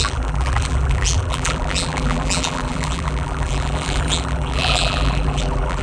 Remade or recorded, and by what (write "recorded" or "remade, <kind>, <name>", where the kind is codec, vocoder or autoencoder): remade, vocoder, BigVGAN v2